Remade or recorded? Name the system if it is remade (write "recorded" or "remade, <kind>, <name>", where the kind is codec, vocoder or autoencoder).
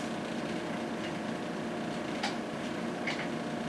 recorded